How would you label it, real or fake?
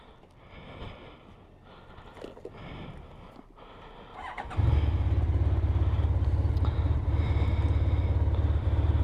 real